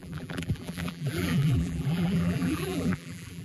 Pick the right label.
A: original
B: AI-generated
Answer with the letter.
B